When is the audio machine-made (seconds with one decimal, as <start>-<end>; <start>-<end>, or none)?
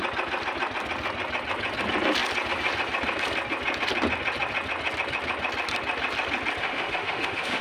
6.6-7.6